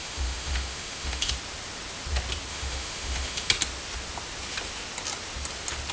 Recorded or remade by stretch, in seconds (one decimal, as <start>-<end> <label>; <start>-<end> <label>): 0.0-1.3 remade; 1.3-2.5 recorded; 2.5-3.5 remade; 3.5-5.9 recorded

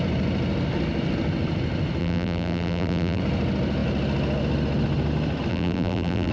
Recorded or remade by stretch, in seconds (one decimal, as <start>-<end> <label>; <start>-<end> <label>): 0.0-2.0 recorded; 2.0-3.2 remade; 3.2-5.5 recorded; 5.5-6.3 remade

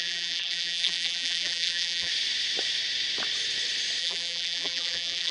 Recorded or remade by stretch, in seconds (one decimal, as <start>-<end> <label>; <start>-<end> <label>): 0.0-2.1 remade; 2.1-4.0 recorded; 4.0-5.3 remade

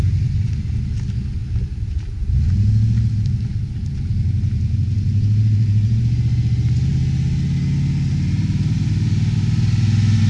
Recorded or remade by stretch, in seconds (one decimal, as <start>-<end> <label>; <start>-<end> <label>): 0.0-1.4 recorded; 1.4-2.3 remade; 2.3-3.5 recorded; 3.5-6.0 remade; 6.0-8.1 recorded; 8.1-8.8 remade; 8.8-10.3 recorded